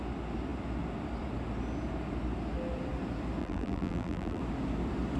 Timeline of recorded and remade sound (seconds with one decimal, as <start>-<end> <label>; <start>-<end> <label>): 0.0-3.4 recorded; 3.4-4.4 remade; 4.4-5.2 recorded